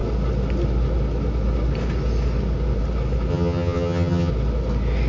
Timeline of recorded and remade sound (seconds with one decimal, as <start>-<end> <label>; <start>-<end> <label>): 0.0-3.3 recorded; 3.3-4.3 remade; 4.3-5.1 recorded